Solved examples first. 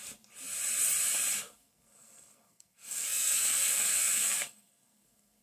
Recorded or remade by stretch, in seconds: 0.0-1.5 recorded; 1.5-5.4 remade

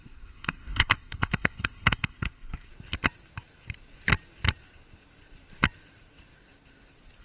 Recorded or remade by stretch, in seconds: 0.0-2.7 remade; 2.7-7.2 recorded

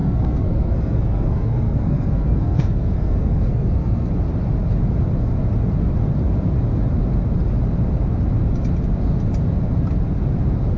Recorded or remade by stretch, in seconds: 0.0-4.1 remade; 4.1-10.8 recorded

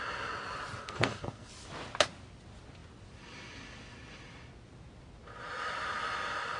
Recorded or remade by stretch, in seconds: 0.0-0.8 recorded; 0.8-1.5 remade; 1.5-6.6 recorded

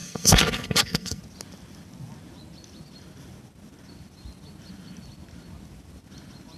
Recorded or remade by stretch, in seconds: 0.0-1.2 remade; 1.2-6.6 recorded

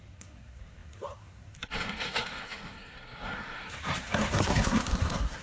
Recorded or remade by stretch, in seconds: 0.0-5.4 remade

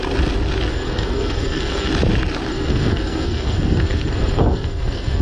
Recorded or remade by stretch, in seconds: 0.0-0.7 recorded; 0.7-1.9 remade; 1.9-2.5 recorded; 2.5-5.2 remade

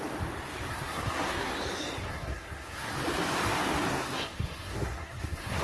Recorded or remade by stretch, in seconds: 0.0-0.7 recorded; 0.7-1.5 remade; 1.5-2.0 recorded; 2.0-2.9 remade; 2.9-3.9 recorded; 3.9-5.6 remade